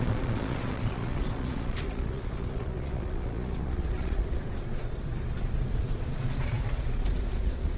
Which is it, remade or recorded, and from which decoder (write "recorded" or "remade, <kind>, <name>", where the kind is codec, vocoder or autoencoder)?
remade, vocoder, Vocos